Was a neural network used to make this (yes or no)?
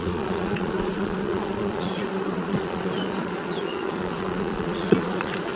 yes